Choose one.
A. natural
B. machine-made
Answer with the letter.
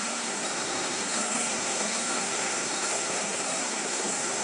B